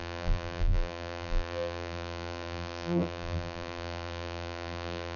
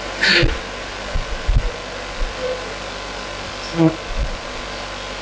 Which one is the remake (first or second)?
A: first